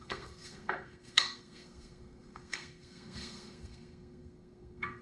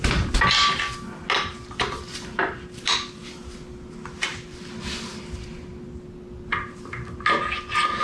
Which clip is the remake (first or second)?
first